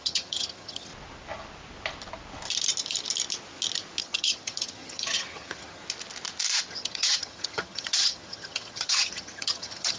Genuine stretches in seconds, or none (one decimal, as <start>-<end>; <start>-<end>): 0.9-4.0; 5.8-6.7